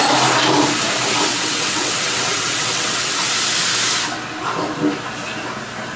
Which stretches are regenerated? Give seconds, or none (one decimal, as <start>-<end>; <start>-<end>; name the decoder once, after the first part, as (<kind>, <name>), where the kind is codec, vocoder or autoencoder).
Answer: 1.3-3.2 (vocoder, WaveNeXt)